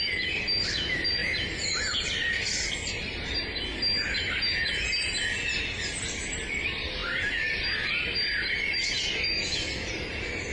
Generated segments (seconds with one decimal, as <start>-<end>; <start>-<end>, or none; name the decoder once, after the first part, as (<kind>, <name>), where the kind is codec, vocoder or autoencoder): none